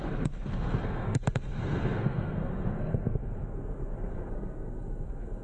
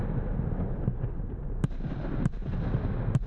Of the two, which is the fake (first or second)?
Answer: first